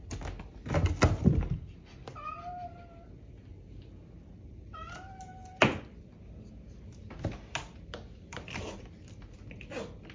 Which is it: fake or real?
real